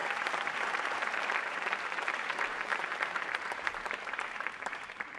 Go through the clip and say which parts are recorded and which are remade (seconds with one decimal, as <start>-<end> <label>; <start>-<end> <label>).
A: 0.0-5.2 remade